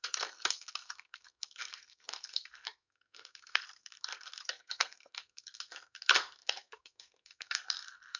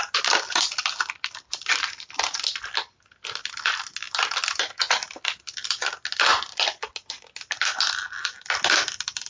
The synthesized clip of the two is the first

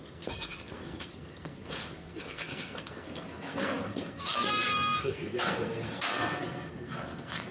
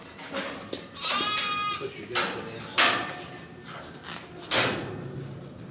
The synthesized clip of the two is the first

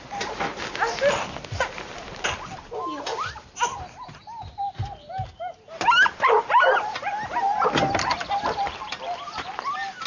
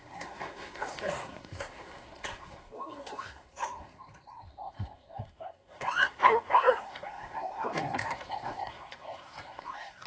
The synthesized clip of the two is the second